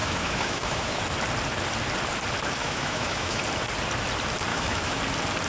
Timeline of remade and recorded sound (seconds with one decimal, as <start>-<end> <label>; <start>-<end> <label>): 0.0-1.0 remade; 1.0-2.6 recorded; 2.6-3.4 remade; 3.4-4.5 recorded; 4.5-5.0 remade; 5.0-5.5 recorded